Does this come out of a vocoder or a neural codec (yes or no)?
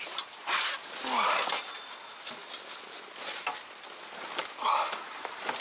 no